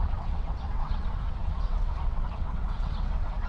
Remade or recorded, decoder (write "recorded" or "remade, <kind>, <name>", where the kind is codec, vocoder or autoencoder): remade, vocoder, WaveNeXt